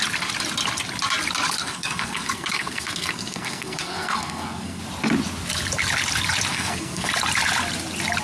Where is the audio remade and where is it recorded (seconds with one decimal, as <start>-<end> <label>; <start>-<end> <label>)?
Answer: 0.0-1.6 recorded; 1.6-4.8 remade; 4.8-6.5 recorded; 6.5-7.1 remade; 7.1-8.2 recorded